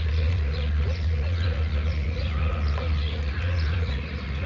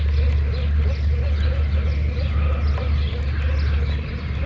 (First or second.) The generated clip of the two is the first